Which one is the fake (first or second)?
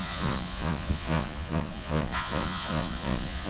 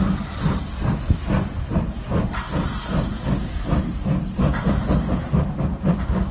first